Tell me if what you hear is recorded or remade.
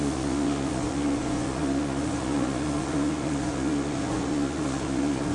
remade